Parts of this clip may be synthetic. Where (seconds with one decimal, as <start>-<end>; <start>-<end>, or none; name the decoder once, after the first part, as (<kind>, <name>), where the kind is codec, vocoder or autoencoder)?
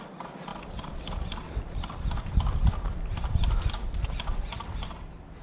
none